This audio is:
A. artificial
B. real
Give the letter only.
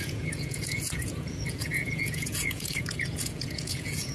A